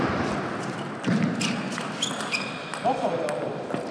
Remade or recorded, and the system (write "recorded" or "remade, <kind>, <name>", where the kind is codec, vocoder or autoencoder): recorded